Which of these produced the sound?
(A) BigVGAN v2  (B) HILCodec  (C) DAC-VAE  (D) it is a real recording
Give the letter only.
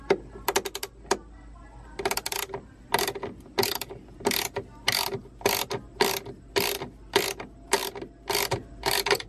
D